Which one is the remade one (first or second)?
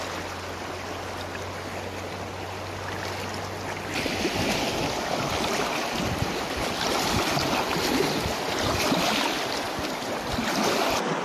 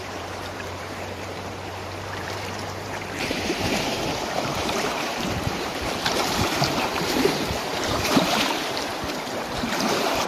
second